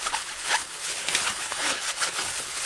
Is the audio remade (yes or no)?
yes